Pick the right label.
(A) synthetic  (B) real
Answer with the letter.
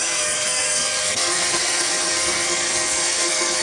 A